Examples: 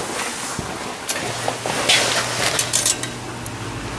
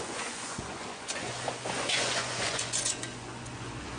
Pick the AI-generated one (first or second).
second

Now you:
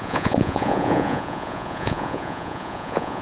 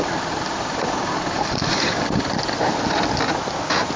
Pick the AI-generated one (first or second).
first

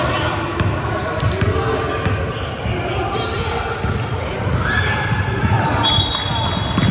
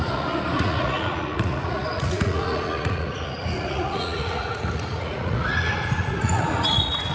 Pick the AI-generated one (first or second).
second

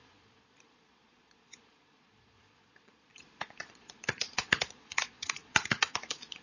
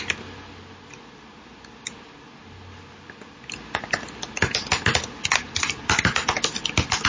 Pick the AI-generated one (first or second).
first